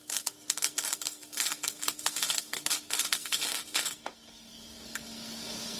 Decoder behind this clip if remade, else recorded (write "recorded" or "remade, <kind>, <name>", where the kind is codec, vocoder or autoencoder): remade, codec, SNAC